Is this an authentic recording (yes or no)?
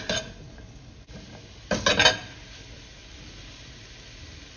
yes